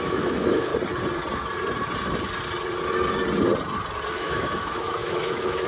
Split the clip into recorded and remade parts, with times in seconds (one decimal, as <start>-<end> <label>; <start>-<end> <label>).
0.0-0.7 remade; 0.7-4.1 recorded; 4.1-5.7 remade